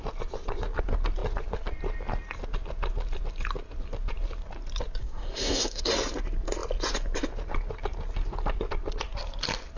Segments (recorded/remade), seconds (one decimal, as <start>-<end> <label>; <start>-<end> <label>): 0.0-5.0 recorded; 5.0-5.8 remade; 5.8-9.8 recorded